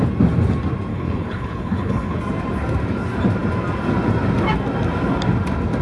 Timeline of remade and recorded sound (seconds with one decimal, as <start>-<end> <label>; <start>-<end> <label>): 0.0-0.9 recorded; 0.9-2.2 remade; 2.2-5.8 recorded